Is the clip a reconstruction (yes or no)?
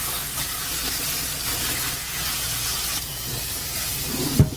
no